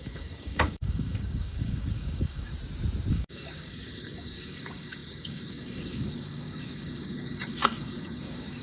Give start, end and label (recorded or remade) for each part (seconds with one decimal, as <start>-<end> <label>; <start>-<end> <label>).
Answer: 0.0-2.5 remade; 2.5-3.1 recorded; 3.1-8.6 remade